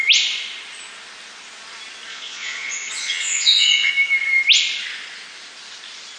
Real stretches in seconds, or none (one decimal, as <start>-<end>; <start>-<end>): 0.0-2.1; 3.9-6.2